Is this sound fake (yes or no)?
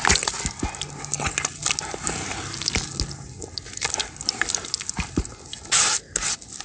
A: no